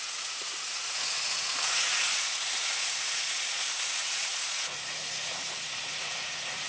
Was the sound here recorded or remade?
remade